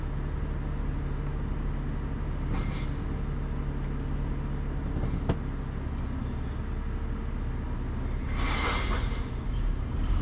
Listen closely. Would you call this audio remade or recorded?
recorded